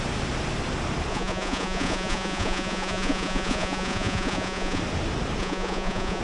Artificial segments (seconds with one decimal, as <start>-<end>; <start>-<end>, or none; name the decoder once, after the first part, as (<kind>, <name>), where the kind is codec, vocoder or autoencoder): 1.1-4.8 (vocoder, Vocos); 5.4-6.2